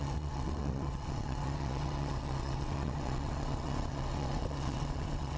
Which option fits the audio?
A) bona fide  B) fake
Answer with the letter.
B